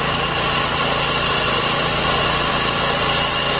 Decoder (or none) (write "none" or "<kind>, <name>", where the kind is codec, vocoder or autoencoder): none